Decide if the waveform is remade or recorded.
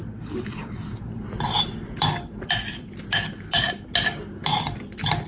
recorded